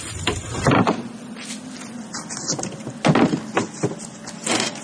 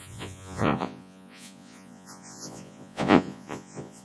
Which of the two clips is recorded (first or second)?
first